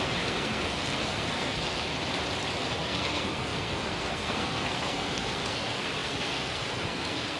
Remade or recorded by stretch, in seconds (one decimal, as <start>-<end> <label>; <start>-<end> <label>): 0.0-1.9 remade; 1.9-2.6 recorded; 2.6-7.4 remade